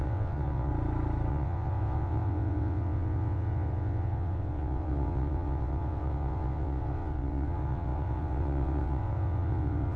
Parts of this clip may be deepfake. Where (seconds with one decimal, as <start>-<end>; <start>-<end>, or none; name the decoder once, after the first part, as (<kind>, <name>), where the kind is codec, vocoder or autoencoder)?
0.0-0.7 (vocoder, WaveNeXt); 1.3-10.0